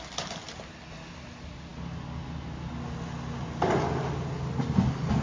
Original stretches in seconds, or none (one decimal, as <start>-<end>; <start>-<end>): 0.0-5.2